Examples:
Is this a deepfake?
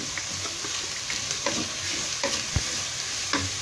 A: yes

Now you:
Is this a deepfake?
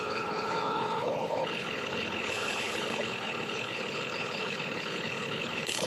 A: yes